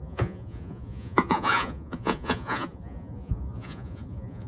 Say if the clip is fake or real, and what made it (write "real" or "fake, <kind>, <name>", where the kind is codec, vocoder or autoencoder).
fake, vocoder, Vocos